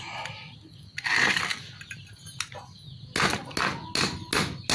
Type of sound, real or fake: real